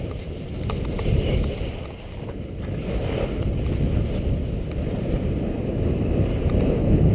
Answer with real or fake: real